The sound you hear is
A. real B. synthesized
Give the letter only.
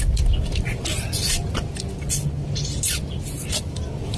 A